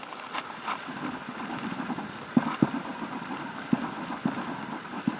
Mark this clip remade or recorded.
recorded